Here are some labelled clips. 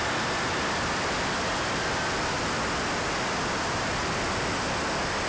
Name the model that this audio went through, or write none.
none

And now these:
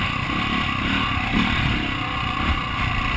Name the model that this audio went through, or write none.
none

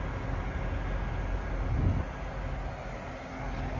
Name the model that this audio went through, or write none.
none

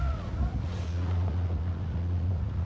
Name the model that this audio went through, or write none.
vocoder, Vocos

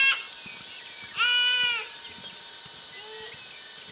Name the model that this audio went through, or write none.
none